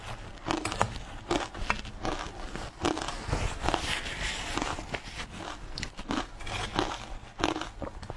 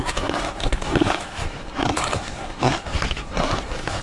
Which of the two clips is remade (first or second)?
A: second